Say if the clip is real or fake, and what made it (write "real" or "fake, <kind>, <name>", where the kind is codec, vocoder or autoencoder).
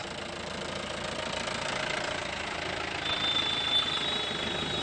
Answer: real